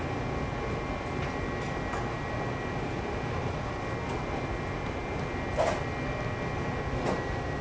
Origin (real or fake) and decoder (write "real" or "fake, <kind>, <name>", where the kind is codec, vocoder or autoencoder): real